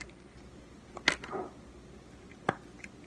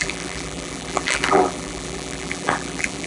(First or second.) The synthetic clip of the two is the second